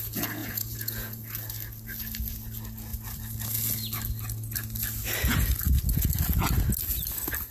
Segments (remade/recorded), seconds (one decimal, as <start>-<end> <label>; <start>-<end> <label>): 0.0-0.4 recorded; 0.4-1.2 remade; 1.2-7.5 recorded